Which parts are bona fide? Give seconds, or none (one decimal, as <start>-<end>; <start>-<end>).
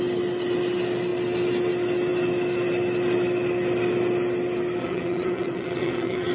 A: 0.0-4.8